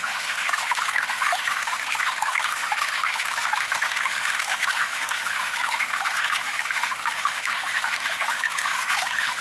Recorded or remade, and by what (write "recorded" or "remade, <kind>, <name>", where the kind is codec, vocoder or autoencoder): remade, autoencoder, DAC-VAE